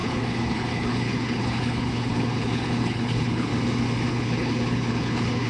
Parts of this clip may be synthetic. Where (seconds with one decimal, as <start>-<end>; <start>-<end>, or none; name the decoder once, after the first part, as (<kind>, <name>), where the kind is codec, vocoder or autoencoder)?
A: 0.0-3.5 (codec, HILCodec); 4.1-5.5